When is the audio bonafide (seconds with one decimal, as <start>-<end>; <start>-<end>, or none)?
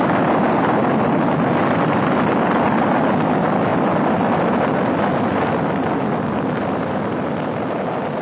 0.0-8.2